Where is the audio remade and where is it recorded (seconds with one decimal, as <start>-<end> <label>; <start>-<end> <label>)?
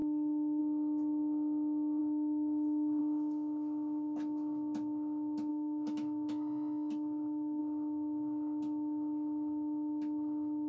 0.0-0.6 remade; 0.6-2.0 recorded; 2.0-3.0 remade; 3.0-5.5 recorded; 5.5-7.6 remade; 7.6-10.7 recorded